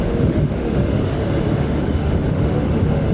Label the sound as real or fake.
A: fake